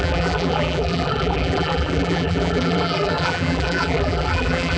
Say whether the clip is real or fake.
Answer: fake